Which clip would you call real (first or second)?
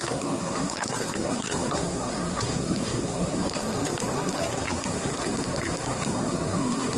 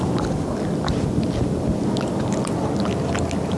second